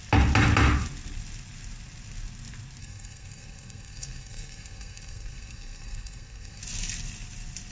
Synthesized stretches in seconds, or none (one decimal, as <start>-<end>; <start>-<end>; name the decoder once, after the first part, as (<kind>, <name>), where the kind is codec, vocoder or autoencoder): 2.8-6.6 (codec, SNAC)